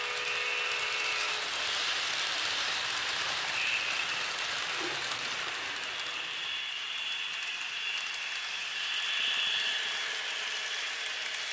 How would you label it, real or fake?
real